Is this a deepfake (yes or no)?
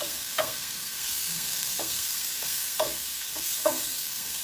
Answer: yes